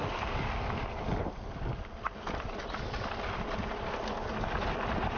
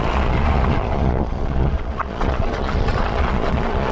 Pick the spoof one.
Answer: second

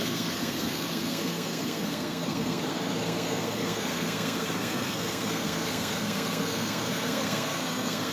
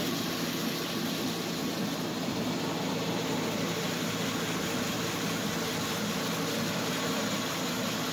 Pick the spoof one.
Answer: first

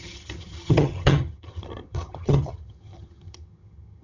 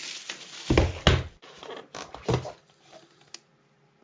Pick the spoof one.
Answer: first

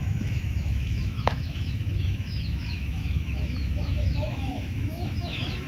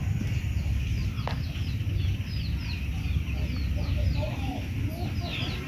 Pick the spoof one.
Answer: first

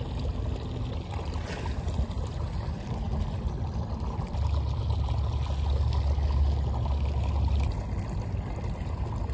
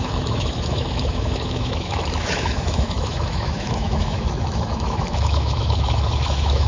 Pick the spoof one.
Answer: second